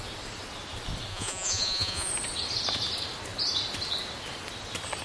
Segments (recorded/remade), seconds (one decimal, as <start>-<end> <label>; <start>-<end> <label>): 0.0-1.1 recorded; 1.1-2.1 remade; 2.1-5.0 recorded